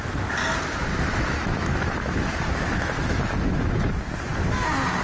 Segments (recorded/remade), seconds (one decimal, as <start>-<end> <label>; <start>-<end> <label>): 0.0-0.9 recorded; 0.9-3.9 remade; 3.9-5.0 recorded